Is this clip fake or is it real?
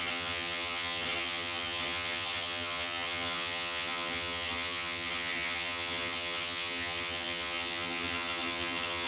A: fake